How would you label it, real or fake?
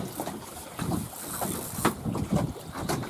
real